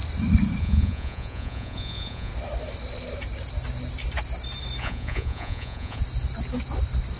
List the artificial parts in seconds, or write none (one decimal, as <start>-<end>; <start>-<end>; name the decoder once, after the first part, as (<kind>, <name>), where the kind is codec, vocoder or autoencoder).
0.6-2.3 (vocoder, Vocos); 4.8-6.0